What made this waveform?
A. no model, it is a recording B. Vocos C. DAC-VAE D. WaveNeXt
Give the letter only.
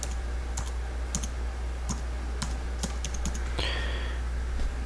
A